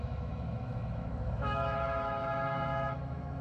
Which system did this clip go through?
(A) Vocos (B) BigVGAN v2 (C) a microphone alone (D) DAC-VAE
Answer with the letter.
D